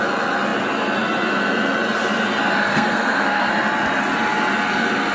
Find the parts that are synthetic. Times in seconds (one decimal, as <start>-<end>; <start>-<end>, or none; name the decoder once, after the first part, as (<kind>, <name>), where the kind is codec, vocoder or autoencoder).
2.7-3.5 (codec, SNAC)

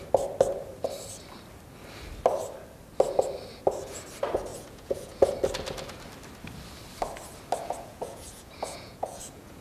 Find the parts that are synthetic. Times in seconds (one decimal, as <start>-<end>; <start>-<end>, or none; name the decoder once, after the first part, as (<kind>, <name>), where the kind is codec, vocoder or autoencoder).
4.5-5.3 (vocoder, Vocos); 7.6-9.6

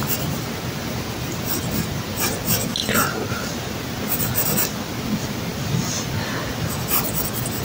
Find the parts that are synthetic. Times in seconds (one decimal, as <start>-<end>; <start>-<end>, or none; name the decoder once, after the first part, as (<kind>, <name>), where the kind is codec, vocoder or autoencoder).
0.0-1.0 (vocoder, BigVGAN v2)

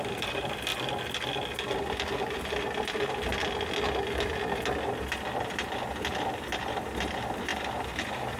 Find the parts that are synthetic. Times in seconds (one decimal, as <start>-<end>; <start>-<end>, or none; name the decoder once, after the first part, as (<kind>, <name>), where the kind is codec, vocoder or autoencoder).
0.0-0.7 (vocoder, BigVGAN v2); 1.6-3.3; 5.9-8.4

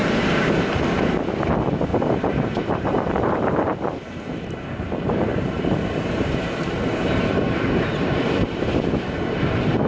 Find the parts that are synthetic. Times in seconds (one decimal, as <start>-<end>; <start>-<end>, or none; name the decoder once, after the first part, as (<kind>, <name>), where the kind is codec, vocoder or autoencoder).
0.0-0.7 (vocoder, BigVGAN v2); 1.9-3.9; 5.3-8.2

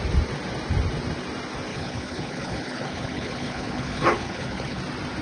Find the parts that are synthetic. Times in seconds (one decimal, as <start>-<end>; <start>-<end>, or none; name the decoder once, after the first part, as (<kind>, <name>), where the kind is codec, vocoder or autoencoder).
1.7-4.8 (codec, HILCodec)

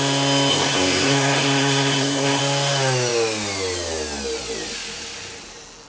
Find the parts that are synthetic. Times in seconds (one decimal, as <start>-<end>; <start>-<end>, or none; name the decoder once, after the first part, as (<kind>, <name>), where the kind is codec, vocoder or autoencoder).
0.5-2.4 (codec, SNAC)